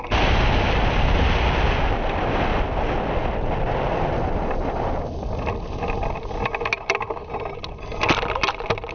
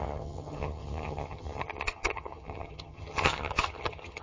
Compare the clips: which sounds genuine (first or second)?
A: first